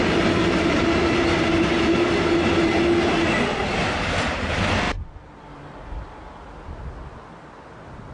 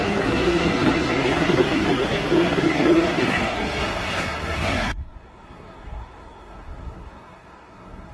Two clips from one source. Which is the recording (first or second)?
first